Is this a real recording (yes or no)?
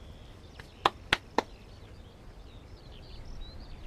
yes